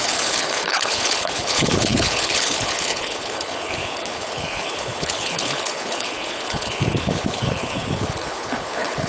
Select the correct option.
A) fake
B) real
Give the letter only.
A